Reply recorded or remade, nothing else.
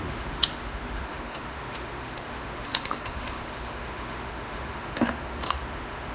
remade